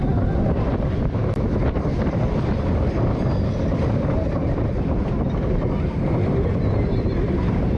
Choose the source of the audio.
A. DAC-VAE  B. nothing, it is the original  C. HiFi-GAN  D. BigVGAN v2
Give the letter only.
D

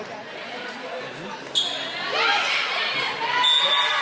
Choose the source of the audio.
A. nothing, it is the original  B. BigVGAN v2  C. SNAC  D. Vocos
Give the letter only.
A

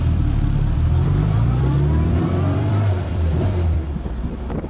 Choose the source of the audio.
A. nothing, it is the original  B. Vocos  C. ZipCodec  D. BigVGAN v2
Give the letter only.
D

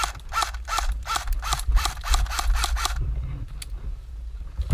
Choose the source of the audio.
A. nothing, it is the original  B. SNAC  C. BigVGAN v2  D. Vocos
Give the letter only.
A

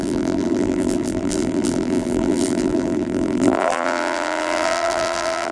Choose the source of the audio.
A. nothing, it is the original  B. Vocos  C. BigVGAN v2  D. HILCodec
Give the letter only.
C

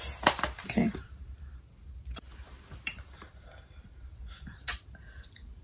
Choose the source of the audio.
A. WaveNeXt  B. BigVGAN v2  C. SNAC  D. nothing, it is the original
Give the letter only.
B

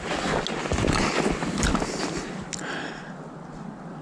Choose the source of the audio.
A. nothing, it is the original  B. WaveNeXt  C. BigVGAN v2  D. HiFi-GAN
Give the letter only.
A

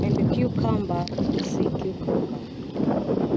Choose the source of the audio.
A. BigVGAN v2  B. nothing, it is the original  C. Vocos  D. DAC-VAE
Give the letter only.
B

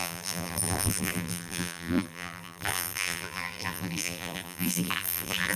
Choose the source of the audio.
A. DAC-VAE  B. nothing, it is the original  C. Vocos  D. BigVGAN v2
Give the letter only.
D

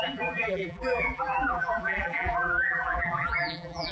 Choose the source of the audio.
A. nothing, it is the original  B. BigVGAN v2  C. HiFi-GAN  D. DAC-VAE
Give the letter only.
B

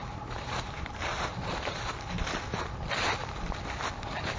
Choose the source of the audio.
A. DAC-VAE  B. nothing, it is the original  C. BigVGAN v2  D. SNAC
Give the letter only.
C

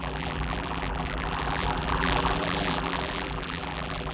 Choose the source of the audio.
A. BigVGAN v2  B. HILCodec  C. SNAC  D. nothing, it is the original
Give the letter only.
A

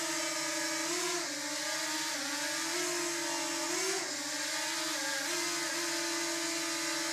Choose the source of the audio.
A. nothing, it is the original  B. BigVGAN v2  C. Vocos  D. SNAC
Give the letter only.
A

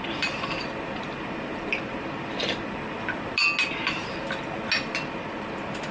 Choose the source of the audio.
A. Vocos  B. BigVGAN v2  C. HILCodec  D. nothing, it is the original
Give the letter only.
D